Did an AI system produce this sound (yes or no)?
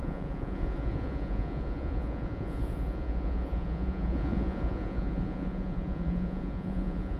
yes